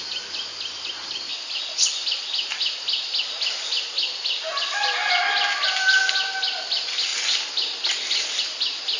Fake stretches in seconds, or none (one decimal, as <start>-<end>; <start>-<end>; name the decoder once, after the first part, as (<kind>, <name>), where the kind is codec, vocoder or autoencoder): none